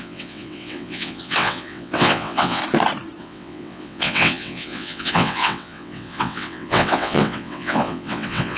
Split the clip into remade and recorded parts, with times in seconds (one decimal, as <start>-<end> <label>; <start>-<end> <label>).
0.0-2.6 remade; 2.6-3.2 recorded; 3.2-8.6 remade